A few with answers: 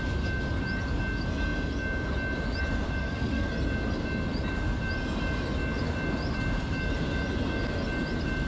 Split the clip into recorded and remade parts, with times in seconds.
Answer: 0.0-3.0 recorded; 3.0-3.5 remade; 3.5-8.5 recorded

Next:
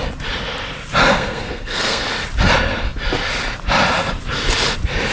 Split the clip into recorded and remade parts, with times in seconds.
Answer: 0.0-1.1 recorded; 1.1-2.0 remade; 2.0-5.1 recorded

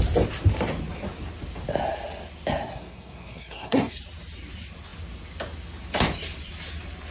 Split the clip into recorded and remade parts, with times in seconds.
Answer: 0.0-2.6 recorded; 2.6-4.0 remade; 4.0-7.1 recorded

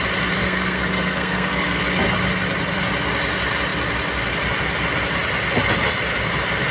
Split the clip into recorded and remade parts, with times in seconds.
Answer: 0.0-0.4 recorded; 0.4-1.8 remade; 1.8-6.7 recorded

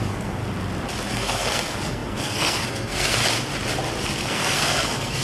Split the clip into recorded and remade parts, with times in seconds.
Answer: 0.0-0.4 remade; 0.4-1.1 recorded; 1.1-3.2 remade; 3.2-4.2 recorded; 4.2-5.2 remade